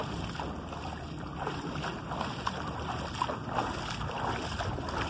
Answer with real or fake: real